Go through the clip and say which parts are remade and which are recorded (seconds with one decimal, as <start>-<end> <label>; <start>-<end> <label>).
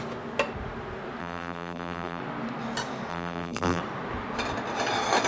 0.0-1.2 recorded; 1.2-2.2 remade; 2.2-3.1 recorded; 3.1-3.8 remade; 3.8-5.3 recorded